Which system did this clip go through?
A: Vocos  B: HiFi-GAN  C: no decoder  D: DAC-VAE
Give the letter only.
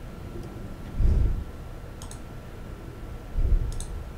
C